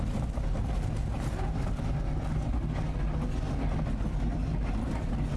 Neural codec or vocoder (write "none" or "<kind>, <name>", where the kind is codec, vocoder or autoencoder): none